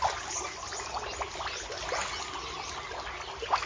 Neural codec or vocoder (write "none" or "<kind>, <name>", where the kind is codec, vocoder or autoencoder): none